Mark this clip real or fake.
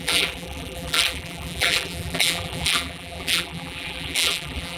fake